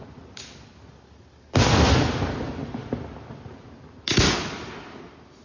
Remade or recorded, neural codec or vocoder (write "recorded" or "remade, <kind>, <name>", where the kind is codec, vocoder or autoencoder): recorded